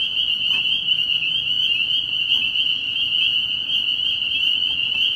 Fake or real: real